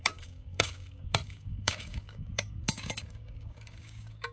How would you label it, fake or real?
fake